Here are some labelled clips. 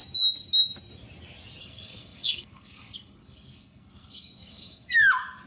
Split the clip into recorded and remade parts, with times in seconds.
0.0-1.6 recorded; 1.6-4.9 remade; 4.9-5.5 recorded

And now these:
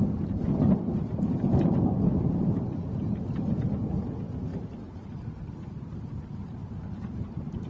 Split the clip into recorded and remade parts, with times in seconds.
0.0-6.6 remade; 6.6-7.3 recorded; 7.3-7.7 remade

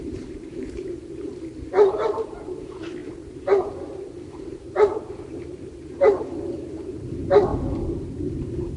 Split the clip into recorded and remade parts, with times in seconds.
0.0-1.3 remade; 1.3-1.9 recorded; 1.9-7.5 remade; 7.5-8.1 recorded; 8.1-8.8 remade

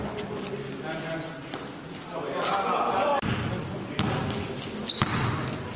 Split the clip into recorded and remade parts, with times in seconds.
0.0-5.8 recorded

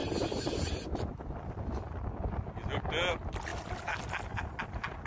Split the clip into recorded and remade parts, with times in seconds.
0.0-5.1 recorded

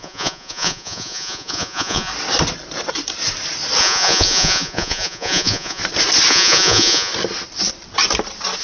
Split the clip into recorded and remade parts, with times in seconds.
0.0-2.1 remade; 2.1-3.8 recorded; 3.8-5.8 remade; 5.8-6.3 recorded; 6.3-7.1 remade; 7.1-8.6 recorded

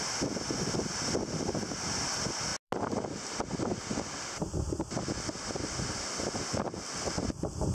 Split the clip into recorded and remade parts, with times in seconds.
0.0-7.7 recorded